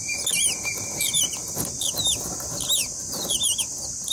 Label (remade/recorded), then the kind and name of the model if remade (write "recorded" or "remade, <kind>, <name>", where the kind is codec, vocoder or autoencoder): recorded